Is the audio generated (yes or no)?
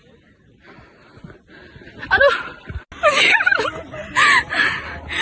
no